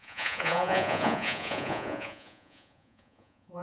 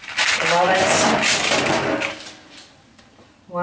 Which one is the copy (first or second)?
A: first